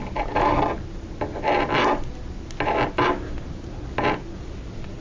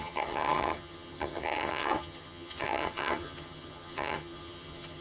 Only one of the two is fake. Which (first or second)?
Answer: second